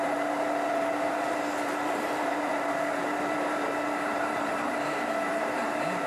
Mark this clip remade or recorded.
remade